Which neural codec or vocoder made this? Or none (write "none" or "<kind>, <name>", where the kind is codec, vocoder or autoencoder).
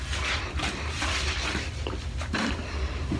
vocoder, BigVGAN v2